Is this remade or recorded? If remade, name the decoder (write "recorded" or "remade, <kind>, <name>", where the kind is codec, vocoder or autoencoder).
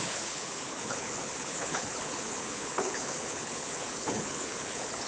remade, codec, HILCodec